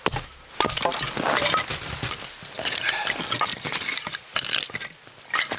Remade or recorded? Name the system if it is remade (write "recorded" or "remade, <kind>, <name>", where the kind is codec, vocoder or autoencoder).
recorded